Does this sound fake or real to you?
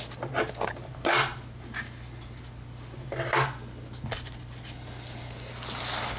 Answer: real